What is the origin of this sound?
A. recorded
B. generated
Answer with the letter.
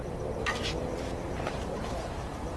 B